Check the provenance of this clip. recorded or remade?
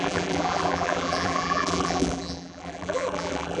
remade